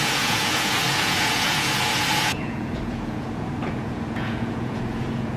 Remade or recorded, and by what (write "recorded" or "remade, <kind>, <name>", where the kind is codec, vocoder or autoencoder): remade, vocoder, Vocos